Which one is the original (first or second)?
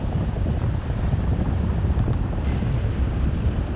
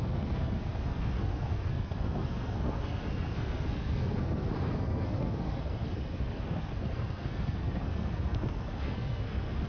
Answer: first